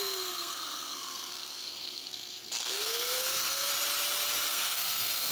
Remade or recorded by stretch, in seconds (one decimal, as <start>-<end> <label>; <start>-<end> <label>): 0.0-3.7 remade; 3.7-4.5 recorded; 4.5-5.3 remade